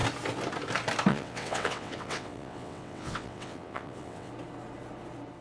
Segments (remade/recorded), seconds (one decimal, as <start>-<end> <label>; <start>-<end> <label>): 0.0-1.1 recorded; 1.1-4.3 remade; 4.3-5.4 recorded